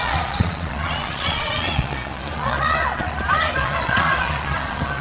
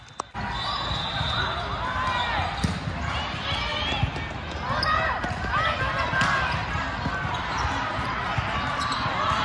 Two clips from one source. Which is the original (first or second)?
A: second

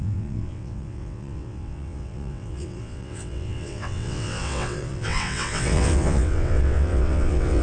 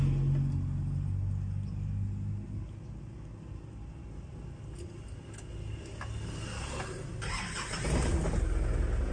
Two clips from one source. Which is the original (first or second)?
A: second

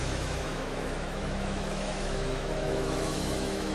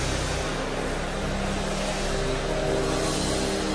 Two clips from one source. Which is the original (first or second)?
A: second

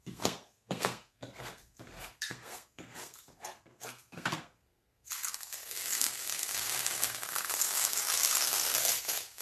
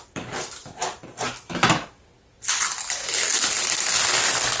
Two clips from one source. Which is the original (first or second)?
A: second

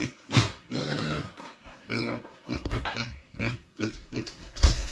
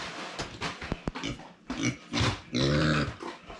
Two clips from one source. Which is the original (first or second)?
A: second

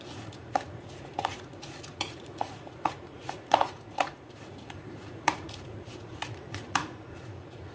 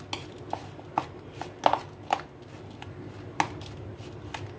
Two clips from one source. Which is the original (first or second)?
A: second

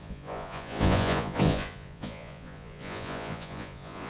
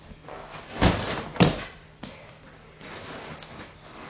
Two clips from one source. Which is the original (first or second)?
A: second